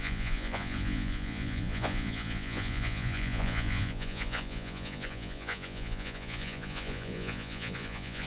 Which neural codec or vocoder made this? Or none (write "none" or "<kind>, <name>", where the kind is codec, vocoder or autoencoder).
vocoder, Vocos